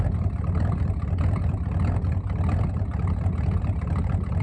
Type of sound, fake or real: real